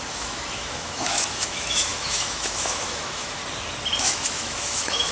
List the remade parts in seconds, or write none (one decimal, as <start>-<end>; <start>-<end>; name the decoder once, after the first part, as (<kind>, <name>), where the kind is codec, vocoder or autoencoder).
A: 0.0-3.4 (autoencoder, DAC-VAE); 4.0-5.1